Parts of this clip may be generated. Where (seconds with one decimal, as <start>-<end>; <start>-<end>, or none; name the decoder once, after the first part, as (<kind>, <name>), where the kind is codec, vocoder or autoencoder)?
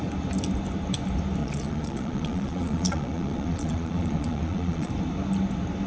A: 1.4-4.9 (vocoder, Vocos)